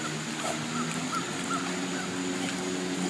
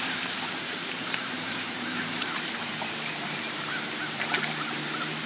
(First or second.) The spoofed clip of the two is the second